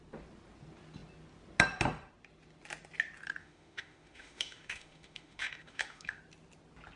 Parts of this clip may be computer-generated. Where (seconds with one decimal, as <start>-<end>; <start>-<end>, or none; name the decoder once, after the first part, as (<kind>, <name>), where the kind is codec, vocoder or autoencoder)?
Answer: 3.4-6.2 (autoencoder, DAC-VAE)